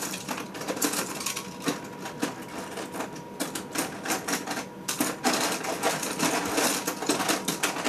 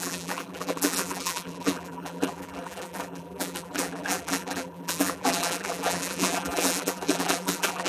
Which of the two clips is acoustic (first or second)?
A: first